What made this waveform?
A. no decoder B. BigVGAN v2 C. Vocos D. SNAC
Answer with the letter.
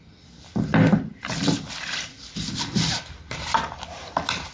B